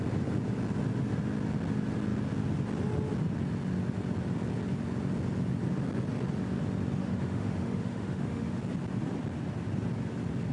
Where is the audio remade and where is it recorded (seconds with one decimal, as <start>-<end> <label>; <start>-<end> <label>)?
0.0-7.0 recorded; 7.0-8.6 remade; 8.6-10.5 recorded